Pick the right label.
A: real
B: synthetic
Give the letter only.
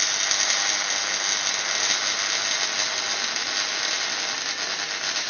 A